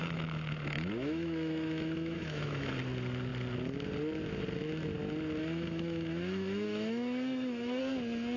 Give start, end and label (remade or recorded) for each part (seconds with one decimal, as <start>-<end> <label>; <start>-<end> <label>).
0.0-2.7 remade; 2.7-5.4 recorded; 5.4-7.8 remade; 7.8-8.4 recorded